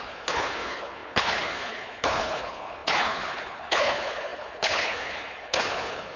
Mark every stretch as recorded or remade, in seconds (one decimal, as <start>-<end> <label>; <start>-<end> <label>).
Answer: 0.0-6.2 remade